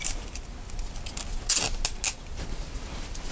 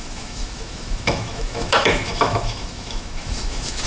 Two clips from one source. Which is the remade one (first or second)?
second